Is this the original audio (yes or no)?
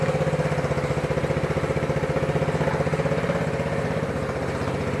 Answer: yes